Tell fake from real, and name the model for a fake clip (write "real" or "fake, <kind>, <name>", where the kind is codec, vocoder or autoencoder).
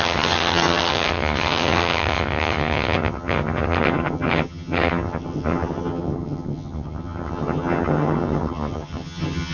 fake, vocoder, HiFi-GAN